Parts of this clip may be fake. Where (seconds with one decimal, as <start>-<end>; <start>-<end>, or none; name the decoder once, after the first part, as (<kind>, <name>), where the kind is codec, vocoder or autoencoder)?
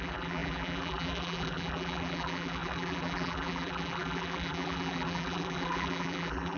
0.0-6.6 (vocoder, BigVGAN v2)